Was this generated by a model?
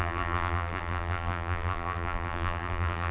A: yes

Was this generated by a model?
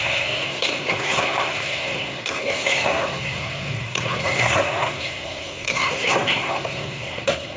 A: yes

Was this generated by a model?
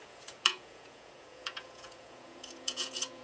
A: yes